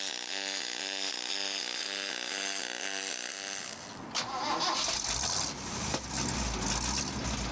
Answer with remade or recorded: recorded